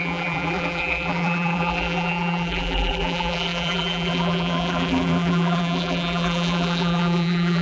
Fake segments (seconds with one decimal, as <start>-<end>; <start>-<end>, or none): 0.0-7.6